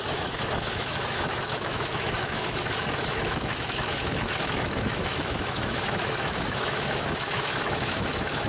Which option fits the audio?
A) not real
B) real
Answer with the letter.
A